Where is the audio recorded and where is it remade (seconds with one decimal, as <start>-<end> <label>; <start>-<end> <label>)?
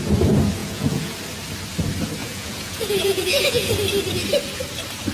0.0-0.6 recorded; 0.6-1.2 remade; 1.2-2.2 recorded; 2.2-3.7 remade; 3.7-5.1 recorded